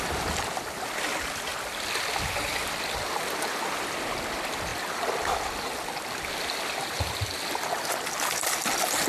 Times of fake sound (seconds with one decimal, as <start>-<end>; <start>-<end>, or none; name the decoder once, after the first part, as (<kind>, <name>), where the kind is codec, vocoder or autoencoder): none

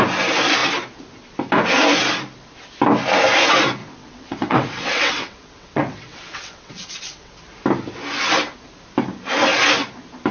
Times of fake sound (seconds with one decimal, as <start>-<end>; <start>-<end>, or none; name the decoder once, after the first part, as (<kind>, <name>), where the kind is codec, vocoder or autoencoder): 3.8-7.3 (vocoder, WaveNeXt)